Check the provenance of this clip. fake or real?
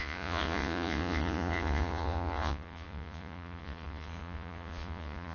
fake